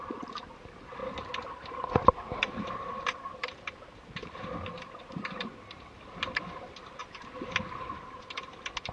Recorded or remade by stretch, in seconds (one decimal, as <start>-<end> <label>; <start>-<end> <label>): 0.0-1.0 remade; 1.0-2.1 recorded; 2.1-4.2 remade; 4.2-5.0 recorded; 5.0-8.9 remade